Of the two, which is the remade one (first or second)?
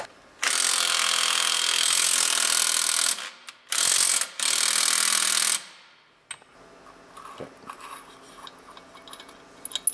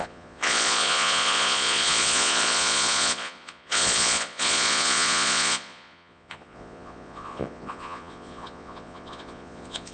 second